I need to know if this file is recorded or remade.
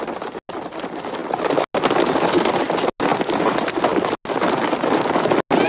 recorded